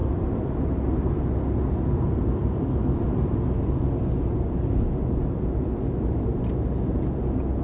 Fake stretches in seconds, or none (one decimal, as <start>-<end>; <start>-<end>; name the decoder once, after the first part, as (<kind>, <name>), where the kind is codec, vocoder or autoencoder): 0.0-1.1 (vocoder, BigVGAN v2); 2.4-3.8